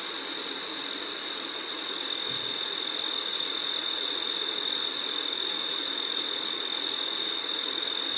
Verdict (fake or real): real